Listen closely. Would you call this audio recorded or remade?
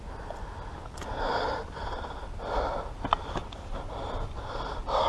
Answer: recorded